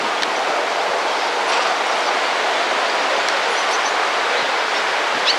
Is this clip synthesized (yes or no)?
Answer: no